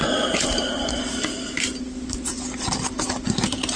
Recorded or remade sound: recorded